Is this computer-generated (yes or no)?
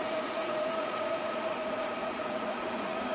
yes